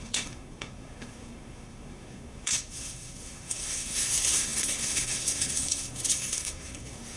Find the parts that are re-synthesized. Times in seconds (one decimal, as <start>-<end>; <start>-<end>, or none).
0.0-7.2